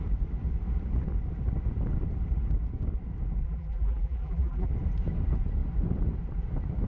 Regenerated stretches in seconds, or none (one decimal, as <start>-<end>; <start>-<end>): 3.4-4.7